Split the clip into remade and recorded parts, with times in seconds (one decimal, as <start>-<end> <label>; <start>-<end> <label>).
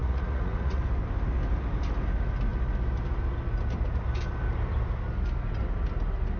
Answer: 0.0-0.8 remade; 0.8-6.4 recorded